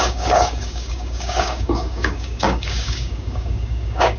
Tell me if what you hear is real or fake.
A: fake